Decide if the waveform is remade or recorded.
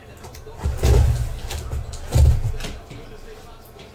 recorded